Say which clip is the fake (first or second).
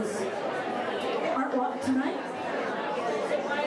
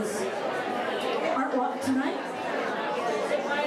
first